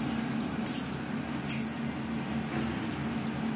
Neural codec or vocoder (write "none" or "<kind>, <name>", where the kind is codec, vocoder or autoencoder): none